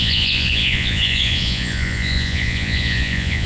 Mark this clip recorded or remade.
remade